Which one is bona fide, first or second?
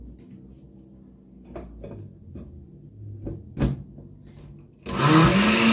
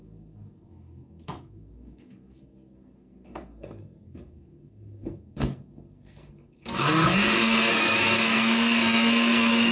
first